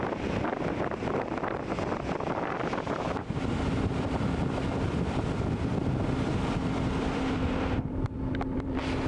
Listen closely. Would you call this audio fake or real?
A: fake